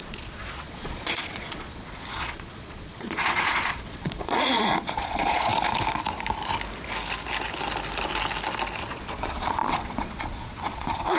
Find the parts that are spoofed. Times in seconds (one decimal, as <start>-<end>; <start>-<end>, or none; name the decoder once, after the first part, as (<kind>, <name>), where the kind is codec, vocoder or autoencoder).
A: 0.0-5.5 (vocoder, Vocos); 8.9-11.2